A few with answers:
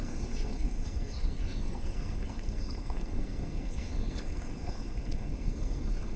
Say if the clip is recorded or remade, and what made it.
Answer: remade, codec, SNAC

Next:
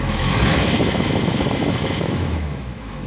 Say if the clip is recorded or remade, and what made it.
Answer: remade, autoencoder, DAC-VAE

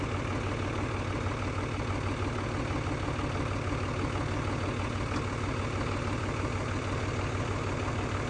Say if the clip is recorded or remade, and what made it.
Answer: recorded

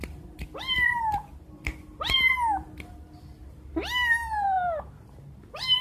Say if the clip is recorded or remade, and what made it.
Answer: remade, vocoder, BigVGAN v2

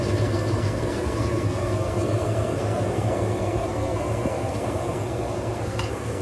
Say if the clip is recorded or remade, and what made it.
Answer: remade, codec, SNAC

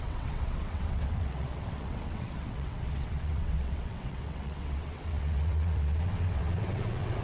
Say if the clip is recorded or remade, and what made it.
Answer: remade, vocoder, WaveNeXt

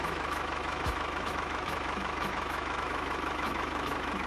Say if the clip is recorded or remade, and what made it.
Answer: remade, autoencoder, DAC-VAE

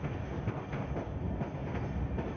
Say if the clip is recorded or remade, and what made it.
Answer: recorded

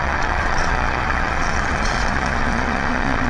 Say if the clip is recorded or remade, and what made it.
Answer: remade, vocoder, Vocos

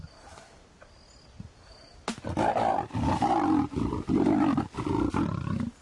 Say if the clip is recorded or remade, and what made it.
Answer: recorded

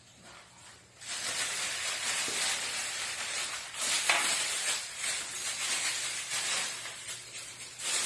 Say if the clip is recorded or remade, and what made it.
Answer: remade, vocoder, BigVGAN v2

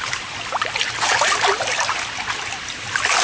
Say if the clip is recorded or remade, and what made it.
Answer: remade, vocoder, BigVGAN v2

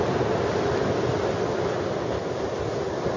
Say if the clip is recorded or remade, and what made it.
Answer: recorded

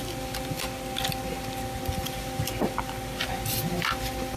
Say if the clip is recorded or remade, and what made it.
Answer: recorded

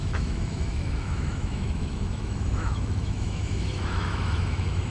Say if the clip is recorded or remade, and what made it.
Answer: remade, autoencoder, DAC-VAE